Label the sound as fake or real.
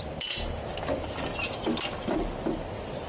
real